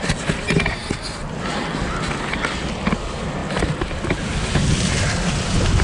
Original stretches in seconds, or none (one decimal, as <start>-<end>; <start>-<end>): 0.0-3.4; 4.2-5.8